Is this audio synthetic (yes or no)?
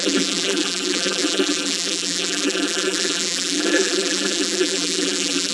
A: yes